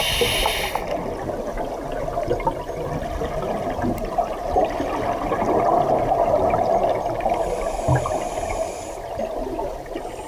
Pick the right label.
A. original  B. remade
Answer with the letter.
A